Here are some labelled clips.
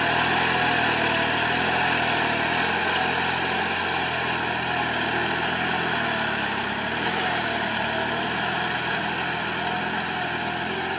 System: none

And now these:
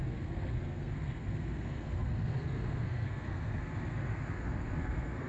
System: codec, SNAC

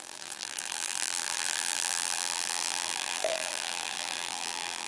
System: vocoder, BigVGAN v2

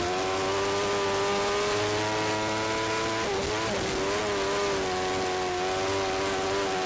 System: none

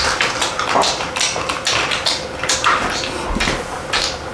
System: none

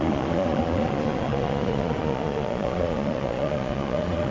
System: vocoder, Vocos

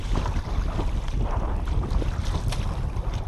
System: none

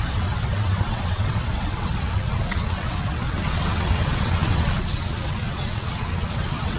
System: vocoder, WaveNeXt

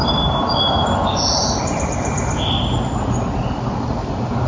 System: none